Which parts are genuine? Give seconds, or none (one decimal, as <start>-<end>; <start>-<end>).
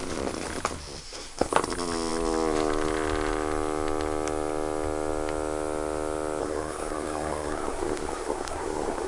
0.0-1.0; 1.5-6.4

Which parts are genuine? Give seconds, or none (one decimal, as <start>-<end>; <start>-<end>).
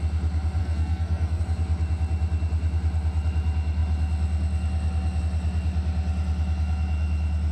0.0-0.6; 1.4-7.5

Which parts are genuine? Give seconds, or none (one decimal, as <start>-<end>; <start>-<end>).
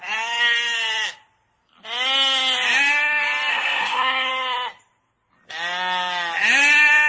0.0-3.5; 4.3-7.1